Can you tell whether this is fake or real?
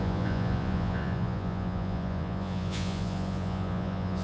fake